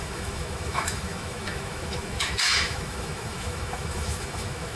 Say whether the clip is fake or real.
fake